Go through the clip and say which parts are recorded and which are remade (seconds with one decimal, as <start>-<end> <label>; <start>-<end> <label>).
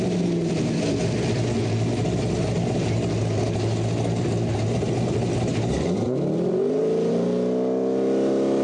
0.0-5.5 recorded; 5.5-7.1 remade; 7.1-8.6 recorded